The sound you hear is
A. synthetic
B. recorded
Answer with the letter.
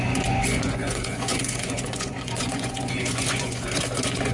A